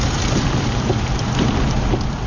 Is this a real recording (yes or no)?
no